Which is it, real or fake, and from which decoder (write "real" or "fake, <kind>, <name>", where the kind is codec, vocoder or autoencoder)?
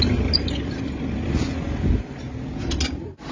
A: real